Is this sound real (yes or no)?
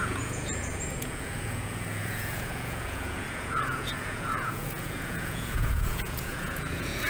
no